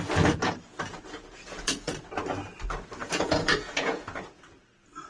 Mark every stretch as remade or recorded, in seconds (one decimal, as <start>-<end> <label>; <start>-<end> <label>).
0.0-0.9 recorded; 0.9-1.9 remade; 1.9-3.0 recorded; 3.0-4.4 remade; 4.4-5.1 recorded